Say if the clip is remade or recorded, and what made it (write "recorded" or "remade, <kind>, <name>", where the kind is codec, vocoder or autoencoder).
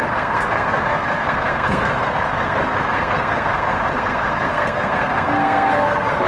remade, codec, SNAC